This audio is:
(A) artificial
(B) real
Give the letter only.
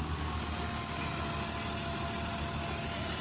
B